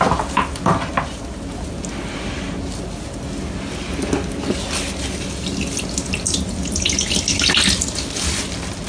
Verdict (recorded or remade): recorded